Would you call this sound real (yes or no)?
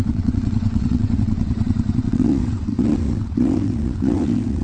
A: no